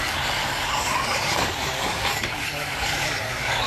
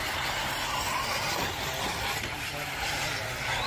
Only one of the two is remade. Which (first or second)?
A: first